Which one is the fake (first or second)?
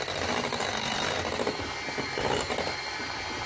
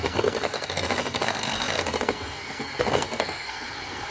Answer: second